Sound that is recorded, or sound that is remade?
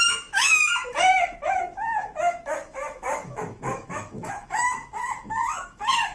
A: remade